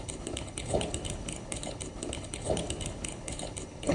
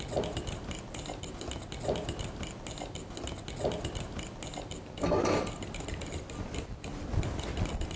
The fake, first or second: first